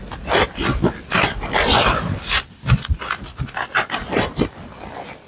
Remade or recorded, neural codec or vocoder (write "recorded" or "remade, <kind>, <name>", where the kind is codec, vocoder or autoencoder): recorded